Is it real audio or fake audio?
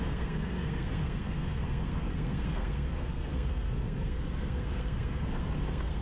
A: fake